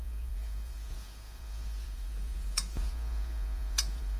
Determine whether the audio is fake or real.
fake